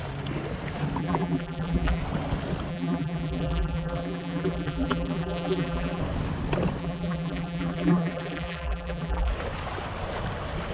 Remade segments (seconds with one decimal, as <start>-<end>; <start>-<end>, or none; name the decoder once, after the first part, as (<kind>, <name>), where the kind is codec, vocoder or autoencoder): 1.0-2.0 (vocoder, BigVGAN v2); 2.7-6.0; 6.8-9.3